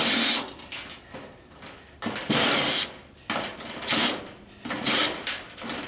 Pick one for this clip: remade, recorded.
recorded